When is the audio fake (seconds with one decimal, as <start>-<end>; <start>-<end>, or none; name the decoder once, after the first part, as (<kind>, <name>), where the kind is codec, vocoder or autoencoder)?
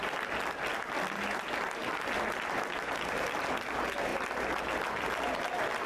none